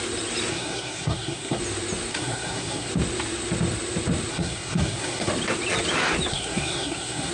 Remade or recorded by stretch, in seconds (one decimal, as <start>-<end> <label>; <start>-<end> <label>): 0.0-0.5 recorded; 0.5-1.6 remade; 1.6-2.1 recorded; 2.1-2.9 remade; 2.9-4.3 recorded; 4.3-5.3 remade; 5.3-6.3 recorded; 6.3-7.3 remade